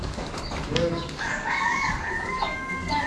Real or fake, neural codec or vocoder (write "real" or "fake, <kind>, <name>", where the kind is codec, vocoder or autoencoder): fake, codec, DAC